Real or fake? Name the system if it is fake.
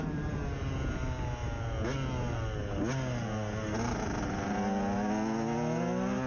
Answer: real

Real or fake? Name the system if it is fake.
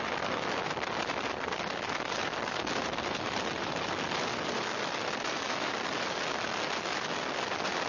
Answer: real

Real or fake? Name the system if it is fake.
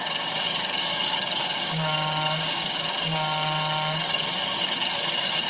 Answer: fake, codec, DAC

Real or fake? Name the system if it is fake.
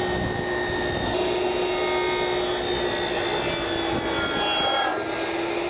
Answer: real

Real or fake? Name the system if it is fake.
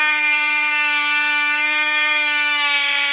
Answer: fake, codec, DAC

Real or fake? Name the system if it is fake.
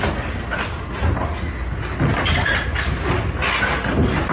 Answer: real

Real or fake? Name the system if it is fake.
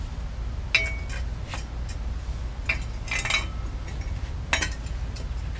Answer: real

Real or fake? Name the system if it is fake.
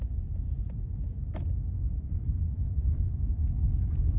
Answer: real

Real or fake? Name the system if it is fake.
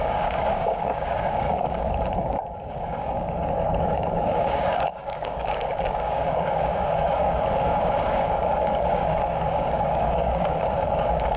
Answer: fake, codec, DAC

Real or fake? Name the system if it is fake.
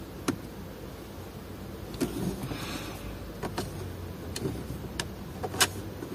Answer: real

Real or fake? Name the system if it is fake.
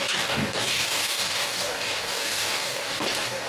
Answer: fake, codec, DAC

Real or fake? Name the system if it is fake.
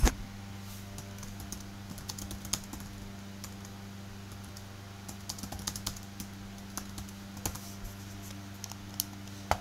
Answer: real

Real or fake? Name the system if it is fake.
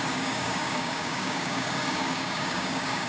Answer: fake, codec, DAC